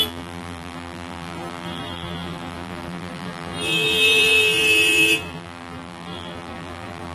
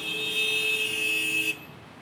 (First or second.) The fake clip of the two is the first